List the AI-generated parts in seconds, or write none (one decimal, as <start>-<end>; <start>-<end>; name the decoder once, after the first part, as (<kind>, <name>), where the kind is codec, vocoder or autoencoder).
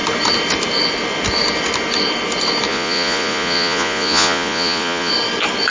2.7-5.1 (vocoder, Vocos)